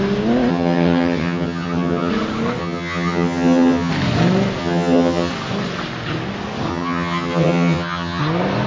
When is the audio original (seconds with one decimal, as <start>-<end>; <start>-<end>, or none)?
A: 0.0-0.5; 2.1-2.6; 3.9-4.6; 5.3-6.7; 8.2-8.7